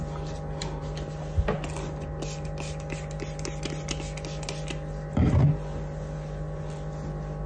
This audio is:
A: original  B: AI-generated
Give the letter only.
A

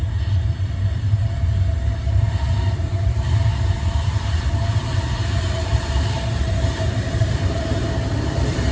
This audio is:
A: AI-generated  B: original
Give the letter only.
A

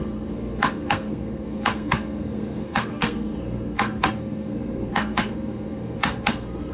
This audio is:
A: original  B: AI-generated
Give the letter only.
B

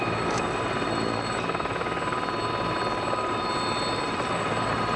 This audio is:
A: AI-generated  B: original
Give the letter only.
B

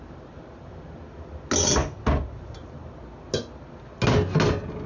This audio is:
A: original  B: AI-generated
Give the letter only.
A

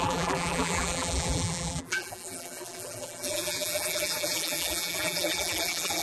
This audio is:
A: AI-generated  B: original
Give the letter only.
A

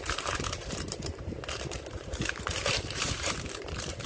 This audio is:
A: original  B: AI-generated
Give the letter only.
B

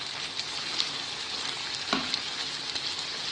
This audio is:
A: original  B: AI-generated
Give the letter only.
A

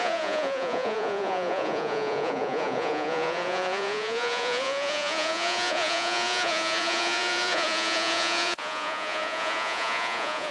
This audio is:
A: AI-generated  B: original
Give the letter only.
A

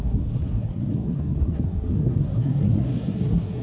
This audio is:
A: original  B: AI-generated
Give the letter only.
B